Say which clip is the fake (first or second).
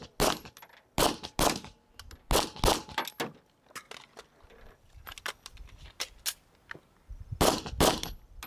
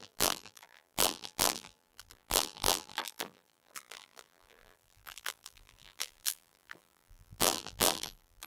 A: second